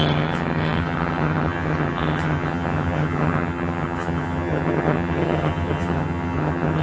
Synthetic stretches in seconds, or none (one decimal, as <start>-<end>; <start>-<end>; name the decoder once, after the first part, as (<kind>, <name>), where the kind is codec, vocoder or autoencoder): 0.0-6.8 (vocoder, HiFi-GAN)